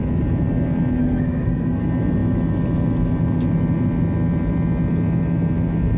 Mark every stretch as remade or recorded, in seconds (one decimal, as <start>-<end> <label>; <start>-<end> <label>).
0.0-1.0 recorded; 1.0-1.8 remade; 1.8-6.0 recorded